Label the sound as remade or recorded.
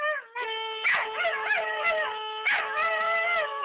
recorded